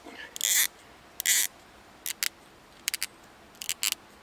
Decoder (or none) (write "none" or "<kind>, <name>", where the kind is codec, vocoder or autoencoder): none